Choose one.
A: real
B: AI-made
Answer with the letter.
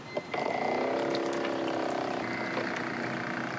A